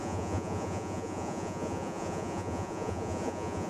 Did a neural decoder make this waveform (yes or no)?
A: yes